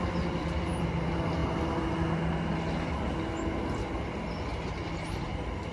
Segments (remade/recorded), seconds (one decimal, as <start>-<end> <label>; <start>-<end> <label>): 0.0-4.5 recorded; 4.5-5.7 remade